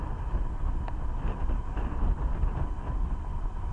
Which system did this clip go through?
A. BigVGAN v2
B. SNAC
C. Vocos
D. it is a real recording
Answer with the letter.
D